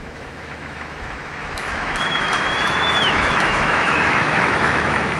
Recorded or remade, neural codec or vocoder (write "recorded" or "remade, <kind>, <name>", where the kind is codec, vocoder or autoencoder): remade, autoencoder, DAC-VAE